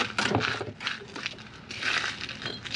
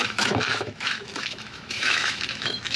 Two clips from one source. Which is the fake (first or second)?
second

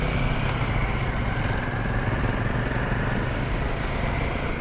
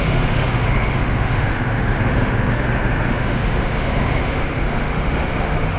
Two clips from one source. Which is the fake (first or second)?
second